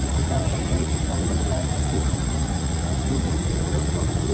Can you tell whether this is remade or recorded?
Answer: remade